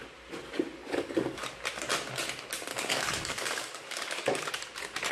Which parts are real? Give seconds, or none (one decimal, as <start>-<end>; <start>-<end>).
0.0-0.8; 1.4-2.7; 4.5-5.1